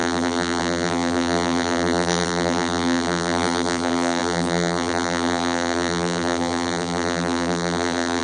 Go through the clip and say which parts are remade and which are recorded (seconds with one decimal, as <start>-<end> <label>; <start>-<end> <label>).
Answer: 0.0-8.2 remade